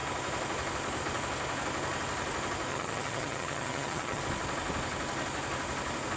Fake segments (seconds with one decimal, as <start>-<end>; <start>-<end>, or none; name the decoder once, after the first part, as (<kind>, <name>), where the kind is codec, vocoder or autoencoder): 2.7-4.2 (vocoder, HiFi-GAN)